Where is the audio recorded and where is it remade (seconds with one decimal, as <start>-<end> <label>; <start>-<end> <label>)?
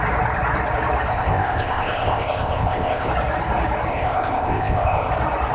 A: 0.0-1.1 recorded; 1.1-3.1 remade; 3.1-3.9 recorded; 3.9-5.1 remade; 5.1-5.5 recorded